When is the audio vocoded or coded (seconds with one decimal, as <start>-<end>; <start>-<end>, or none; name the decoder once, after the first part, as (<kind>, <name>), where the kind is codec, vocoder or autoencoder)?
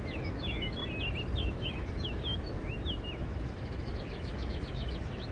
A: 0.0-0.8 (autoencoder, DAC-VAE); 1.4-5.3